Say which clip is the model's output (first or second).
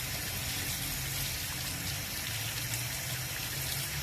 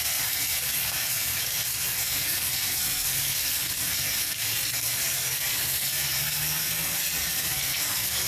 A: second